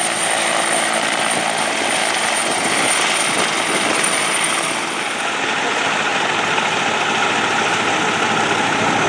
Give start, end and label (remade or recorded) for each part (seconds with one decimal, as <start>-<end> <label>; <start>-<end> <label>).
0.0-9.1 recorded